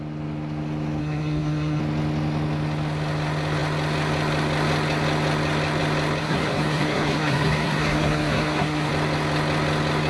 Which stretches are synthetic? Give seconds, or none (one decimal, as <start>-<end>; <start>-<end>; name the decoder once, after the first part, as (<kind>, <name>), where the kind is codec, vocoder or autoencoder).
1.0-1.8 (codec, SNAC); 6.2-8.9